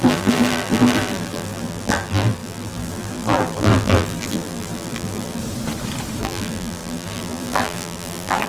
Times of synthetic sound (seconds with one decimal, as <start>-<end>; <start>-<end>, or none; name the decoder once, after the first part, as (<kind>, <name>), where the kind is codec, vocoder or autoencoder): 0.0-5.4 (vocoder, BigVGAN v2); 6.2-8.5